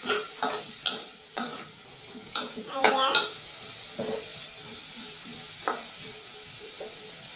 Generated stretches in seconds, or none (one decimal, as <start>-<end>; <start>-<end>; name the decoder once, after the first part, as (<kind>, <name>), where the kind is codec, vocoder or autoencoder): 2.2-2.9 (vocoder, Vocos)